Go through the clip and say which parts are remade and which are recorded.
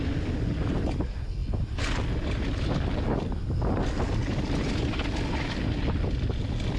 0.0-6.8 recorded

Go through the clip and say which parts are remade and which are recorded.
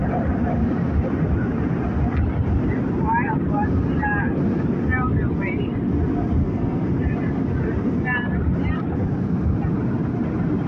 0.0-6.4 recorded; 6.4-6.9 remade; 6.9-10.7 recorded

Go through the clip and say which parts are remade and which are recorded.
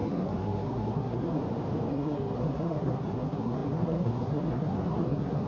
0.0-1.4 remade; 1.4-1.9 recorded; 1.9-5.5 remade